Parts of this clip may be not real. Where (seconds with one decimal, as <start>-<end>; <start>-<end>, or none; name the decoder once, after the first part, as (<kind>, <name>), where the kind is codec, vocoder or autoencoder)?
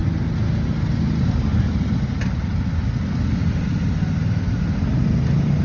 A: none